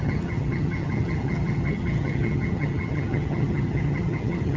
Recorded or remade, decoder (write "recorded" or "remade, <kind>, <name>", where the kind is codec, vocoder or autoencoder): remade, vocoder, HiFi-GAN